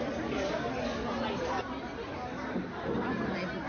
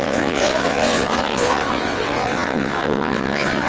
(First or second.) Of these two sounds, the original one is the first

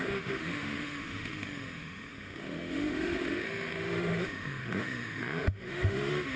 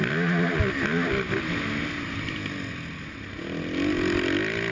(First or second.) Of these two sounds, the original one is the second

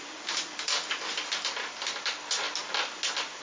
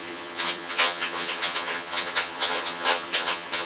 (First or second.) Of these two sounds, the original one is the first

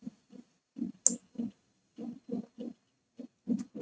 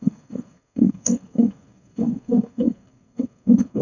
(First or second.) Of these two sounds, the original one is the first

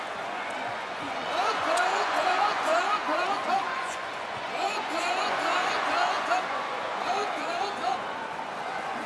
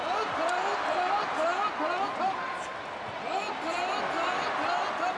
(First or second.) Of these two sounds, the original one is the second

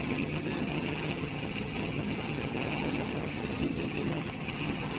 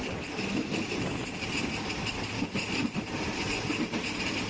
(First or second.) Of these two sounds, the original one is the second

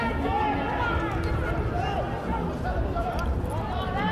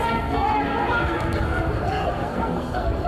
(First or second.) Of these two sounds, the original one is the first